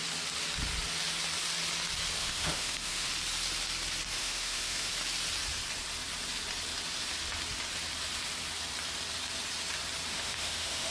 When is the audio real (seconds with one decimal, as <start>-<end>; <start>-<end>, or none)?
0.0-2.2; 3.1-4.2; 4.9-10.1